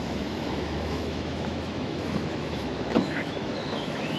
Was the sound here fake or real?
fake